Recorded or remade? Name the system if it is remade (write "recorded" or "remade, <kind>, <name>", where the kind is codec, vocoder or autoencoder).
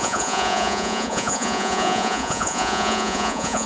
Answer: remade, vocoder, Vocos